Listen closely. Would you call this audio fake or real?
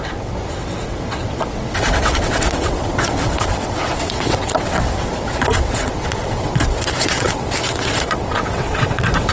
fake